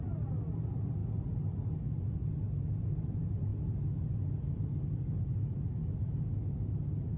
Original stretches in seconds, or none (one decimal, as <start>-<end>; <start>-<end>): 0.0-7.2